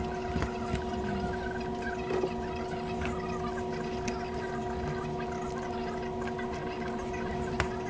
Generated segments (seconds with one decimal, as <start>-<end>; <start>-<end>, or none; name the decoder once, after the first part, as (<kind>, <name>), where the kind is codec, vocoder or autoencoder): none